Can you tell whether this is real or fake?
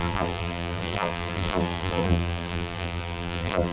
fake